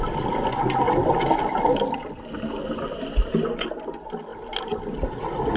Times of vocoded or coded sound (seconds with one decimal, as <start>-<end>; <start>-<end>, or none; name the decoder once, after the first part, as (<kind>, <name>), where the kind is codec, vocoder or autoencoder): none